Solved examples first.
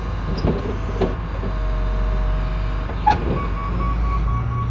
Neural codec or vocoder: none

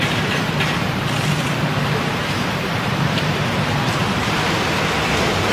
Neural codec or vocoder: vocoder, BigVGAN v2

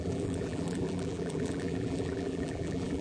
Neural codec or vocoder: vocoder, BigVGAN v2